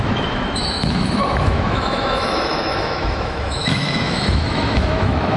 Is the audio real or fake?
fake